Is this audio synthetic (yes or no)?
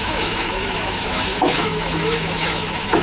yes